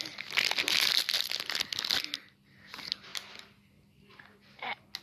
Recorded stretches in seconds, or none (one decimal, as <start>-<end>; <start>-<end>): 0.0-5.0